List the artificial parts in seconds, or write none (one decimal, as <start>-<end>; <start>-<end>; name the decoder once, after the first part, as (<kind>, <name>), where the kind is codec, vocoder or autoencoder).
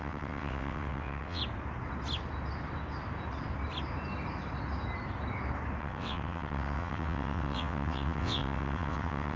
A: 0.0-1.4 (vocoder, WaveNeXt); 5.8-9.4